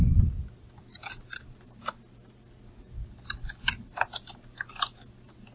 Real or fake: real